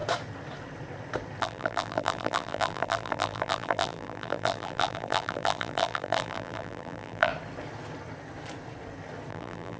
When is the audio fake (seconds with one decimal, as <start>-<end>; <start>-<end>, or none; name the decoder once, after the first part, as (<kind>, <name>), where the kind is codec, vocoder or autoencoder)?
1.4-7.3 (vocoder, BigVGAN v2); 9.3-9.8